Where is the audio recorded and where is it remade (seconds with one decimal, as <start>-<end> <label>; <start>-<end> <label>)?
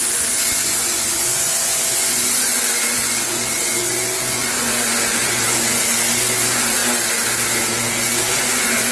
0.0-6.8 remade; 6.8-7.9 recorded; 7.9-8.9 remade